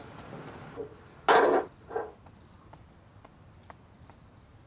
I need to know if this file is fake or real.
real